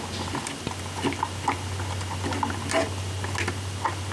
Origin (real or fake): real